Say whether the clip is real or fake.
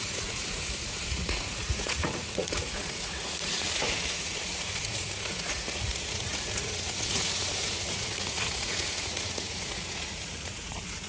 fake